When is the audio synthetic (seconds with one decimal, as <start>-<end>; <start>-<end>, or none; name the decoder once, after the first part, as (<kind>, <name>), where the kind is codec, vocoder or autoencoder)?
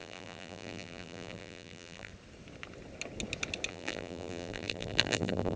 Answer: 0.0-2.1 (vocoder, BigVGAN v2); 3.7-5.6